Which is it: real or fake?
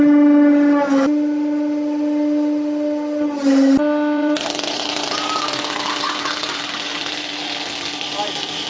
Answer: real